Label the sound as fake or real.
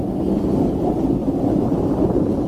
real